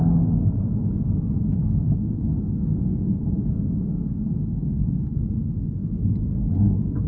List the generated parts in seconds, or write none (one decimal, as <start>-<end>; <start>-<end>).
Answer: 1.6-5.2